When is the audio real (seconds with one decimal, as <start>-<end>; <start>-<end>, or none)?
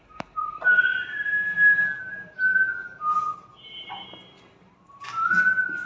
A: 0.0-5.9